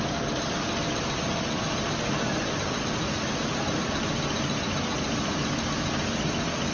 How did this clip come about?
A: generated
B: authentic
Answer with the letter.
B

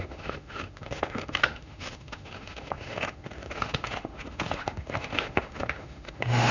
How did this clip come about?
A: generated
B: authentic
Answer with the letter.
A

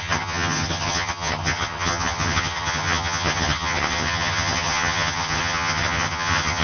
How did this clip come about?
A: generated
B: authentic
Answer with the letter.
A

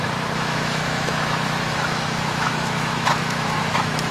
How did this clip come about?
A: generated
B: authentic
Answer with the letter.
A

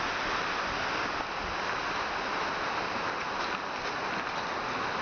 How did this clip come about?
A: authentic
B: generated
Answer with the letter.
A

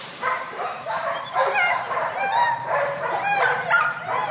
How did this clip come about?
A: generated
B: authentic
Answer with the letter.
A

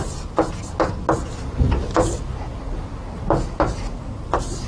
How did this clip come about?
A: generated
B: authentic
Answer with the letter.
B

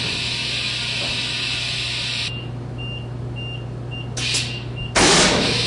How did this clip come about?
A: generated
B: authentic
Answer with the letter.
B